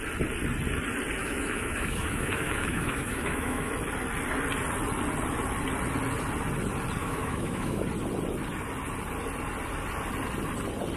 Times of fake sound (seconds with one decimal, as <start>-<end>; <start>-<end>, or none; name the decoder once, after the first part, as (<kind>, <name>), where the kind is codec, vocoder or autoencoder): 1.2-3.7 (autoencoder, DAC-VAE); 7.0-7.8